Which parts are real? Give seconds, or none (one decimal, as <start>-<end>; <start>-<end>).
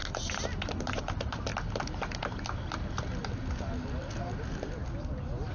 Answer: 0.0-5.5